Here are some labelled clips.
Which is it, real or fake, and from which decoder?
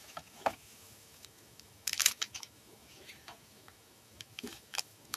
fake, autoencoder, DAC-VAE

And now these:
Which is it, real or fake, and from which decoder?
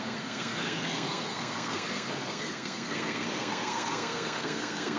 fake, codec, SNAC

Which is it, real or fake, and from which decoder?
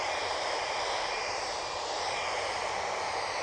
fake, vocoder, BigVGAN v2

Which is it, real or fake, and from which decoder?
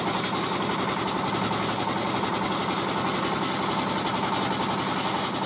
real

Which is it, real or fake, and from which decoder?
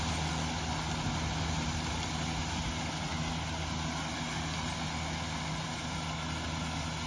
real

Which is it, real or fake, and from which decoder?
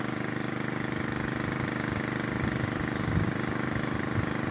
fake, vocoder, BigVGAN v2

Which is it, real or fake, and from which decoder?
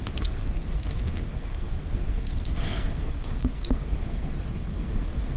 fake, codec, SNAC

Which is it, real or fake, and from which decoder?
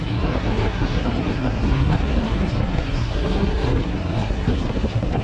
fake, codec, SNAC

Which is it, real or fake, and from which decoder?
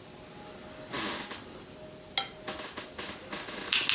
real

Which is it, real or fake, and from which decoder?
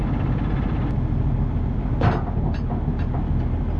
real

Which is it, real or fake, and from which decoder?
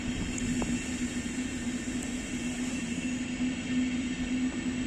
real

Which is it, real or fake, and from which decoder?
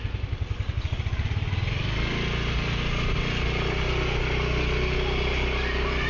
real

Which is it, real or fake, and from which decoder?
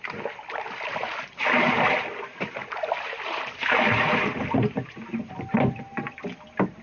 real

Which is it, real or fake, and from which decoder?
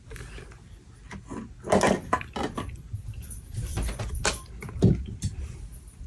real